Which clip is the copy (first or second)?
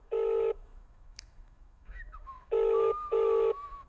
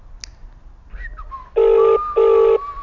first